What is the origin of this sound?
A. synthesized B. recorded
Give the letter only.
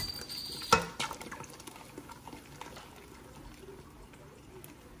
B